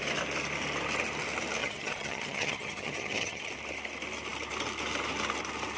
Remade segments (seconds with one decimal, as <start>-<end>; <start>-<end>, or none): 1.6-3.5